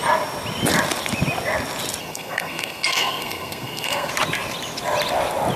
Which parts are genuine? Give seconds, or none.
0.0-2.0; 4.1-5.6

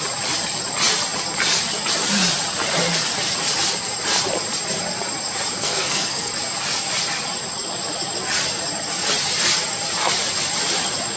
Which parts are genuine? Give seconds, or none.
0.0-5.6; 6.3-11.2

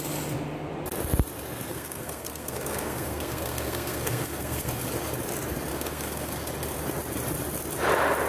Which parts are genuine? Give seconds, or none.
0.0-1.7; 4.8-5.7; 6.3-8.3

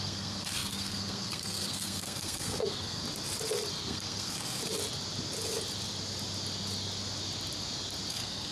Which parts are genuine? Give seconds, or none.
3.0-3.8; 4.6-8.1

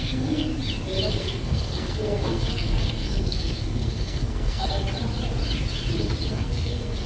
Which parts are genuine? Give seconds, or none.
0.5-1.1; 4.8-6.3